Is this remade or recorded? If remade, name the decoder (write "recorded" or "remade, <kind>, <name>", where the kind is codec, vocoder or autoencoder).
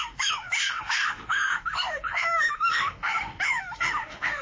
remade, autoencoder, DAC-VAE